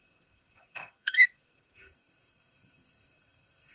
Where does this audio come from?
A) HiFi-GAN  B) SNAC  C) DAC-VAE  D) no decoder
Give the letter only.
B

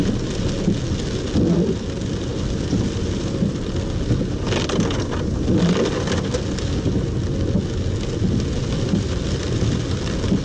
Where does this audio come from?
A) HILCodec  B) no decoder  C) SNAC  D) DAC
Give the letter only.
B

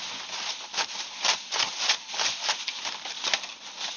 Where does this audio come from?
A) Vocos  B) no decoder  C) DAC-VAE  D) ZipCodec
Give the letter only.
B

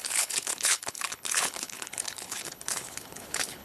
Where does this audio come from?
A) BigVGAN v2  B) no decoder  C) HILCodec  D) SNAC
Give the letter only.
C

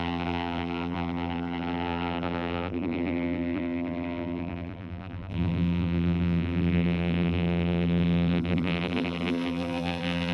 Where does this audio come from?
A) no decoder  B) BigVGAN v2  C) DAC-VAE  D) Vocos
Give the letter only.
B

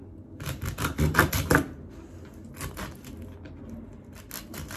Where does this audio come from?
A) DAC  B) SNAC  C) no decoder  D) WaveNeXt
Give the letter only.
C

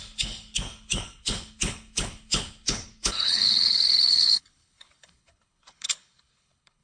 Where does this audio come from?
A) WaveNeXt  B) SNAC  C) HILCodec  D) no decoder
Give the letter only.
C